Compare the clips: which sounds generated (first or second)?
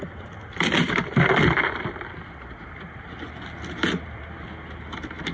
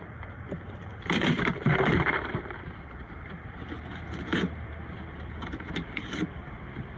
second